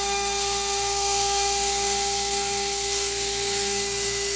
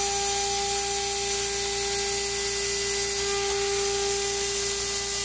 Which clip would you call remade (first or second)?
first